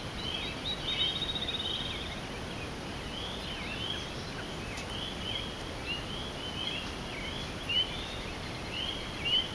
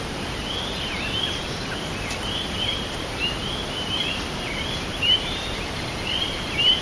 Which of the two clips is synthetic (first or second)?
second